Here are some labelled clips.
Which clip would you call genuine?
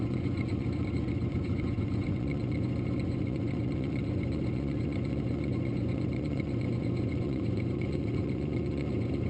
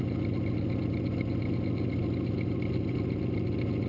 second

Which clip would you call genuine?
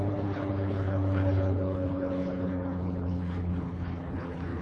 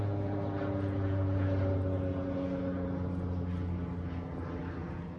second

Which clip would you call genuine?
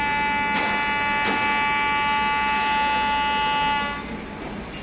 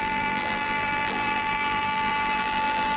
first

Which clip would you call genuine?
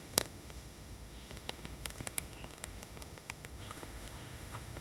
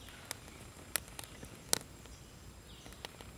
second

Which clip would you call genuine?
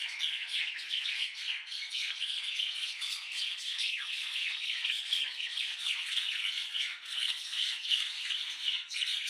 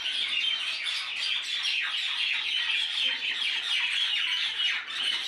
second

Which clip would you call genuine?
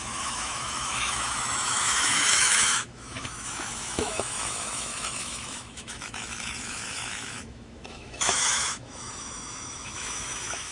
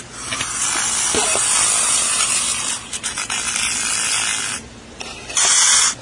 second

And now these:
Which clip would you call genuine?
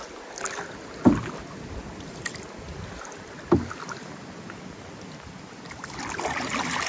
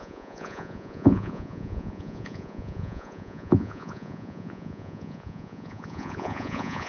first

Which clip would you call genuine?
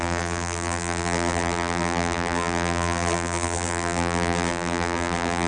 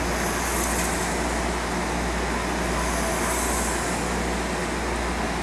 second